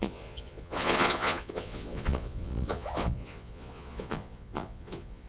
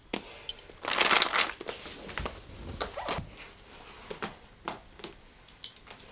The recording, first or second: second